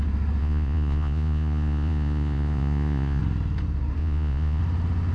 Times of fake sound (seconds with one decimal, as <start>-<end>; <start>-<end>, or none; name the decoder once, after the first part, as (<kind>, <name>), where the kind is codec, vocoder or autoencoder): 0.4-3.2 (vocoder, Vocos); 4.0-4.6